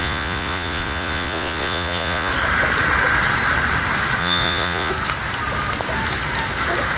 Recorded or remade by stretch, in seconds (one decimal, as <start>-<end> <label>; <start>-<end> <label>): 0.0-2.3 remade; 2.3-4.2 recorded; 4.2-4.9 remade; 4.9-7.0 recorded